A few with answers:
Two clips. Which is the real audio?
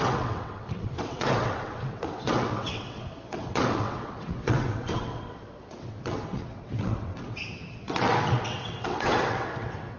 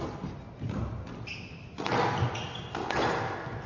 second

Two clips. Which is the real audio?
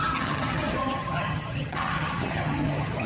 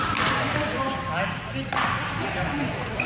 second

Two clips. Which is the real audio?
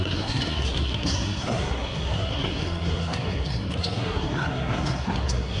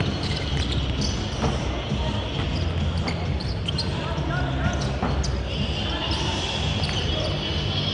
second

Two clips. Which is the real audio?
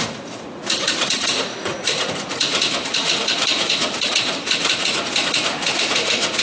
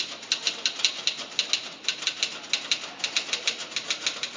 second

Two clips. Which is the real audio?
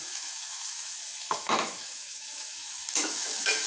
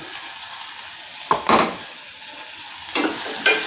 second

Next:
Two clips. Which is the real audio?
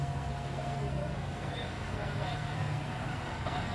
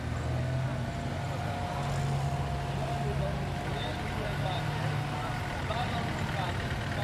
second